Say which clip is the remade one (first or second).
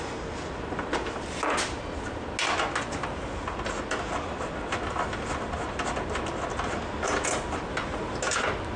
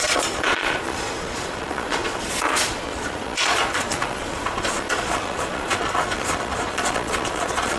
second